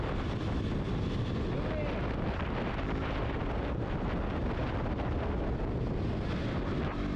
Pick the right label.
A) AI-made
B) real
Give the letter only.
B